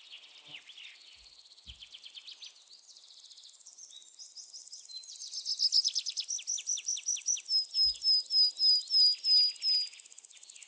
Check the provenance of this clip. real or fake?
real